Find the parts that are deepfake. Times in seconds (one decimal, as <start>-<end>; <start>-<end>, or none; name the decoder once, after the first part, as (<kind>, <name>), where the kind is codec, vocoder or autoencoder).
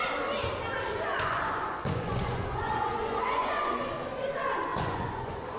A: 1.1-3.9 (vocoder, Vocos); 4.7-5.6